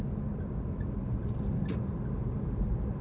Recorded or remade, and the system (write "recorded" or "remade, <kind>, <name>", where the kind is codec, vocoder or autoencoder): recorded